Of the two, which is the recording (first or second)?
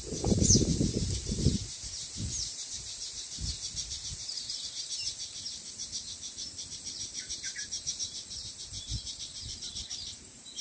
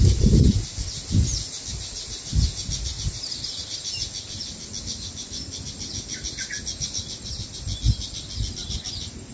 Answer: second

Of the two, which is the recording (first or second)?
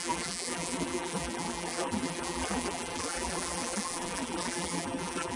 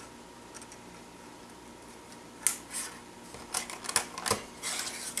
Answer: second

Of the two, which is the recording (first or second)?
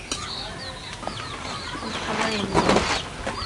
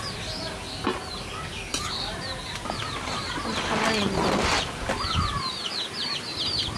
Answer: first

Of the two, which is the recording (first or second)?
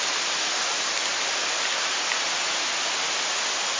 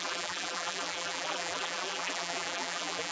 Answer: first